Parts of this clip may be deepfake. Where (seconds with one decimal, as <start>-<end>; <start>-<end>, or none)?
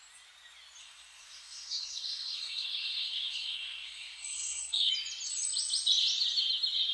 0.8-4.9